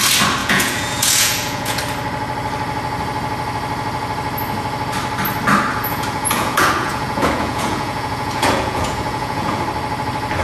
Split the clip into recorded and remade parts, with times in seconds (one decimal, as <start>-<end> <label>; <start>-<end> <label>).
0.0-0.4 recorded; 0.4-1.8 remade; 1.8-5.7 recorded; 5.7-9.6 remade; 9.6-10.4 recorded